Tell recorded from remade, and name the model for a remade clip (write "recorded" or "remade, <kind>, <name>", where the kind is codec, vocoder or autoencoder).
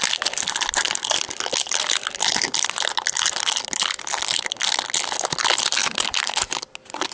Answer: recorded